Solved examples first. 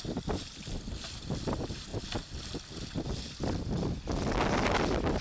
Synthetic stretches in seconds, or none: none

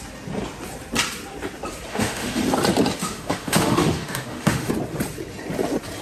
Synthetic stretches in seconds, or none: 1.9-2.4 (autoencoder, DAC-VAE); 3.0-4.7